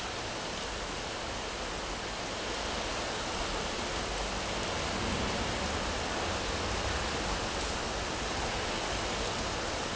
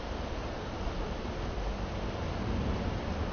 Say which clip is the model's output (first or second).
second